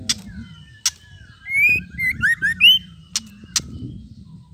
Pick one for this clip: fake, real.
real